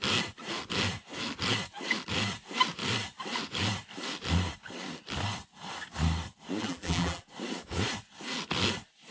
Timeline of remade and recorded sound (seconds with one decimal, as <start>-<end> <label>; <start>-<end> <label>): 0.0-6.6 recorded; 6.6-7.2 remade; 7.2-9.1 recorded